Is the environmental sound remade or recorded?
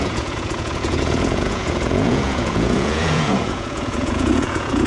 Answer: remade